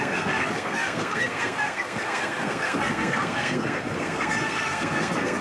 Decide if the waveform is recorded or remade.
remade